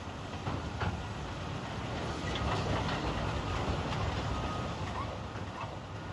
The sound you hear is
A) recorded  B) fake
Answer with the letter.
A